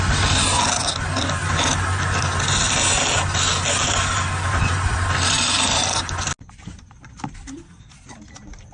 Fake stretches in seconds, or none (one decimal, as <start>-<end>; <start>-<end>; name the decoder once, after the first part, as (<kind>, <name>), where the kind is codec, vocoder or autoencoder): none